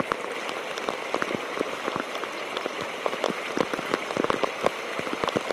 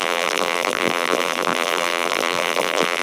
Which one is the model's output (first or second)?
second